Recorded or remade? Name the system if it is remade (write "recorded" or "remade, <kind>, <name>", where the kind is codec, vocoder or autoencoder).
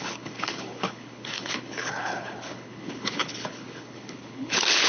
remade, codec, HILCodec